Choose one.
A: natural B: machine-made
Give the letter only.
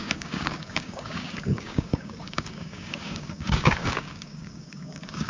B